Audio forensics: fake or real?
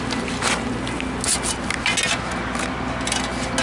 real